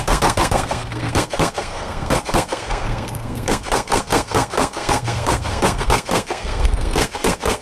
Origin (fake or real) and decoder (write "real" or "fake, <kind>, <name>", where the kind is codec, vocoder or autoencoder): fake, codec, SNAC